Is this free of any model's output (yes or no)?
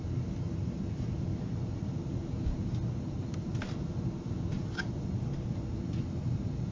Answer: yes